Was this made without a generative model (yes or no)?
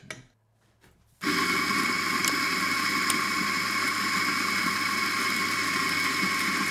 yes